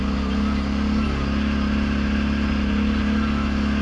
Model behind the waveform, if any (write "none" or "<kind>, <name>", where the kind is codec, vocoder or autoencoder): none